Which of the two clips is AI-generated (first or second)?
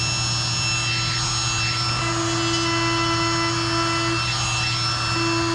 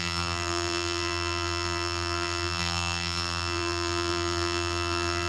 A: second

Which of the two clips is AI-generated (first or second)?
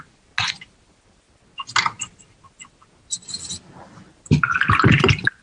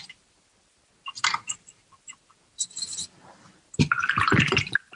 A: second